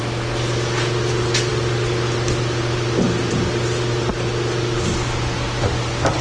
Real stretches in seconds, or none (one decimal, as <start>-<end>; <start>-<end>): 0.0-6.2